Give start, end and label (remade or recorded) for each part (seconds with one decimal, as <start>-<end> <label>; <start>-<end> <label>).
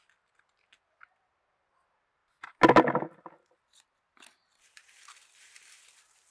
0.0-6.3 recorded